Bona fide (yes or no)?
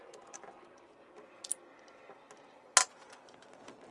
yes